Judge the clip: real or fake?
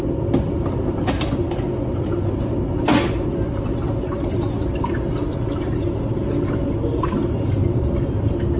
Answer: real